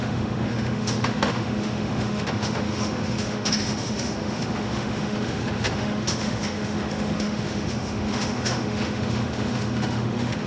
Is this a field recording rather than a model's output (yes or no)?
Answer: no